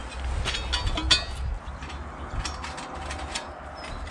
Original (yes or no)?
yes